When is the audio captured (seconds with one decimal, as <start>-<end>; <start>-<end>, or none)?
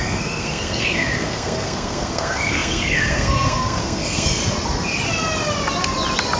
4.4-6.4